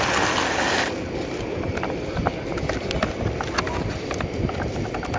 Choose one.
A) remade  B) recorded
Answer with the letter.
B